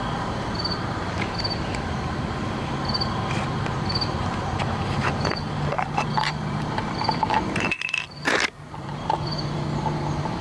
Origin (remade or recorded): remade